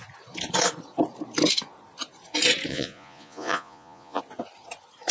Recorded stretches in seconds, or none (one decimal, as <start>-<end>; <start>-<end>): 0.0-2.7; 4.2-5.1